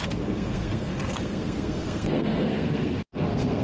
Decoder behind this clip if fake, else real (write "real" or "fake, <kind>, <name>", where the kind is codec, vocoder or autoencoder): fake, codec, SNAC